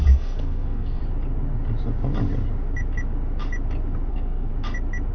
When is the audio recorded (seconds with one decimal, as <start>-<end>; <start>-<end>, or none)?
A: 1.0-4.1; 4.5-5.1